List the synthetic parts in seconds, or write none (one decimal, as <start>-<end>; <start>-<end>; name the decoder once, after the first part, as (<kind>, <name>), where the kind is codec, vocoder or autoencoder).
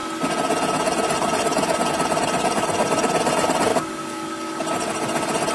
3.7-4.6 (codec, DAC)